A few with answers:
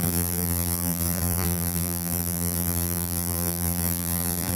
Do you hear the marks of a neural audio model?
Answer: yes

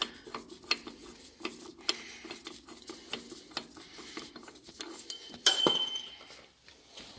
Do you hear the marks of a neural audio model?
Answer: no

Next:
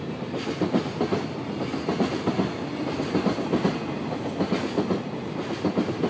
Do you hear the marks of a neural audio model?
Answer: no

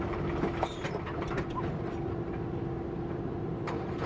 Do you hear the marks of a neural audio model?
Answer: no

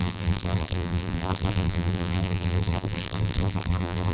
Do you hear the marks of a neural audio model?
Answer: yes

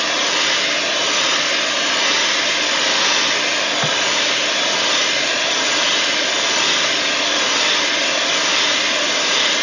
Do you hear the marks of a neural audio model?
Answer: no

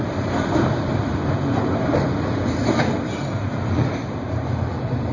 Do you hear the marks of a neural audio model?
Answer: yes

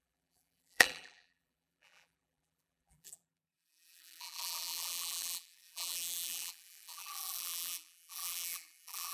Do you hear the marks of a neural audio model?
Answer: yes